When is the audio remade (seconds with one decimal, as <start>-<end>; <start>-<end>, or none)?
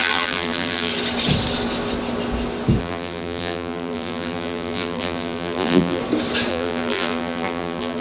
0.0-0.9; 2.8-6.0; 6.5-8.0